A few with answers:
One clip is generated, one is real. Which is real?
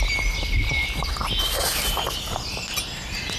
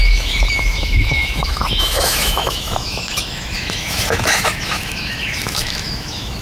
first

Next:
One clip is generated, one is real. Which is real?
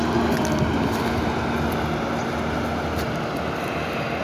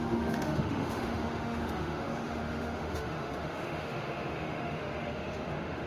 first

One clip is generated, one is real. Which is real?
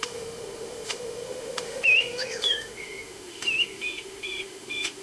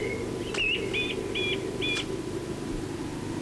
second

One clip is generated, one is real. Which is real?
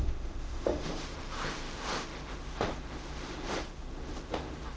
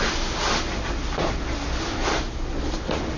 second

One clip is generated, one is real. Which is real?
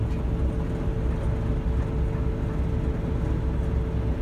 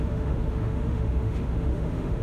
first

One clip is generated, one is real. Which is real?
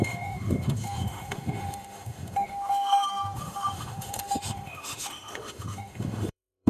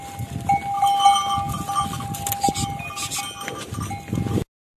second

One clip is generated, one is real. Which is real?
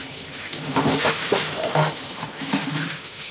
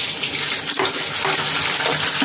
second